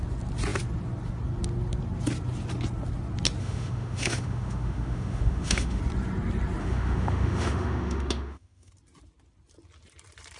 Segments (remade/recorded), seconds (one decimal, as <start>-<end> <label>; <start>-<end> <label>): 0.0-3.4 recorded; 3.4-5.8 remade; 5.8-6.6 recorded; 6.6-8.7 remade; 8.7-10.4 recorded